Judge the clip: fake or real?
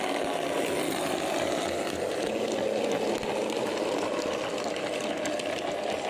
real